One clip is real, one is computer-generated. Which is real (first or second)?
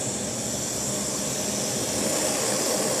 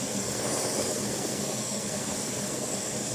first